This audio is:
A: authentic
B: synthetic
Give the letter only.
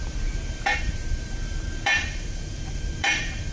B